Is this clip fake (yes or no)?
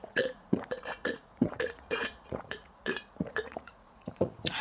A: yes